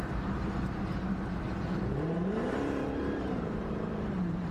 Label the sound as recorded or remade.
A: remade